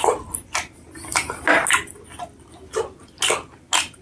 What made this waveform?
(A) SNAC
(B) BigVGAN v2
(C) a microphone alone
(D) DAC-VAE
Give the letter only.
C